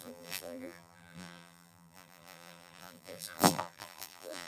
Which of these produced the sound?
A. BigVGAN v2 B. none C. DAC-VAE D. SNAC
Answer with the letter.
A